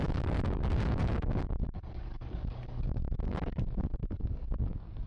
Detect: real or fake fake